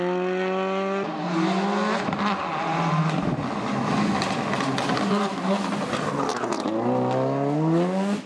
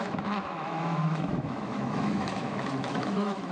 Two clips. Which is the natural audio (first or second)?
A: first